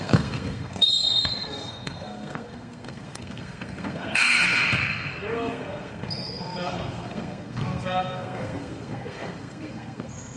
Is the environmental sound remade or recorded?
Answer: remade